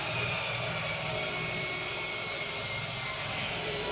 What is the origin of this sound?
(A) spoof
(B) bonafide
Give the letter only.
A